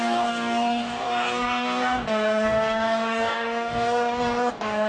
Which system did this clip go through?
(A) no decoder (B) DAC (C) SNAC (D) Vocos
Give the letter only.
B